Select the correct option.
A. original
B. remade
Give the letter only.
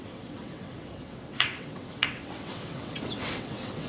B